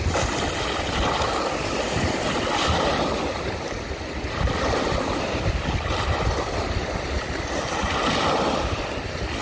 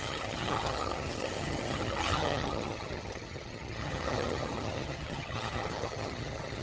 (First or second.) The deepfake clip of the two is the second